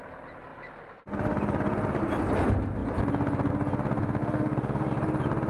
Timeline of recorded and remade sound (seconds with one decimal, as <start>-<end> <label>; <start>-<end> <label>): 0.0-4.2 recorded; 4.2-4.9 remade; 4.9-5.5 recorded